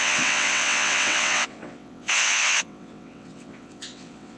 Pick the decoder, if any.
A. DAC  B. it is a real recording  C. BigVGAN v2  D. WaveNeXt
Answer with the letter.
D